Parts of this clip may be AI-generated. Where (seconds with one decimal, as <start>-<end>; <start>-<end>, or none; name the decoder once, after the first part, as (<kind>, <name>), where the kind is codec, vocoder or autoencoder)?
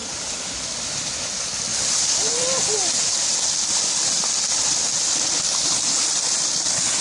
none